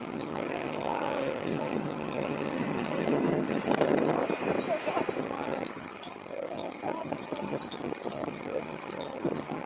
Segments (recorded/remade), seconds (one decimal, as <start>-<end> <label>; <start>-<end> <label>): 0.0-4.2 remade; 4.2-5.2 recorded; 5.2-9.7 remade